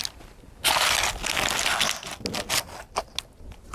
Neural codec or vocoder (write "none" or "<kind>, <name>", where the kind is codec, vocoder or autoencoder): none